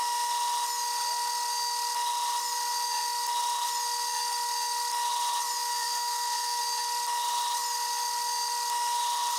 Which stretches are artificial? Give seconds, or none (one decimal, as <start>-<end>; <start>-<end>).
5.7-6.6